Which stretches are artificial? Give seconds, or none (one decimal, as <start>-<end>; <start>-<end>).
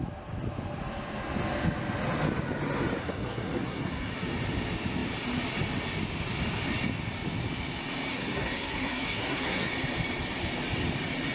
3.0-4.1; 8.1-9.7